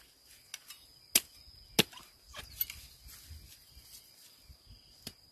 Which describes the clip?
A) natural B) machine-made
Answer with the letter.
A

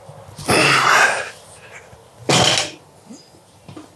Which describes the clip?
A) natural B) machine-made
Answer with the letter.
A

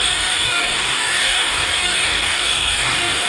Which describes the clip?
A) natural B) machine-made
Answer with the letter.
B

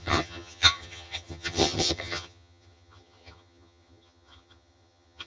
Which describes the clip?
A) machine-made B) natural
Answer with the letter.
A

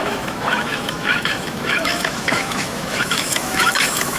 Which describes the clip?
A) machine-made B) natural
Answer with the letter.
A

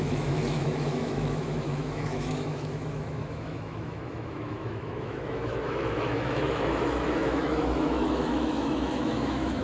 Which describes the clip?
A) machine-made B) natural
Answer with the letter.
A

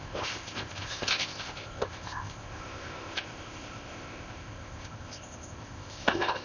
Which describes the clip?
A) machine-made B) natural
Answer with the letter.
A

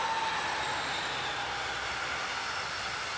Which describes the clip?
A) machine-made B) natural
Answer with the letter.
B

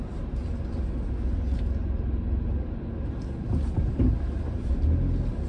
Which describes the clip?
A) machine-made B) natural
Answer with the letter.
B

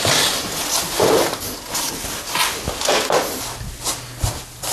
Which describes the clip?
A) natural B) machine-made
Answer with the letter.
A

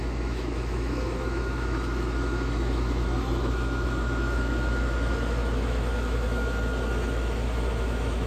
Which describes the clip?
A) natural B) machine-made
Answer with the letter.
B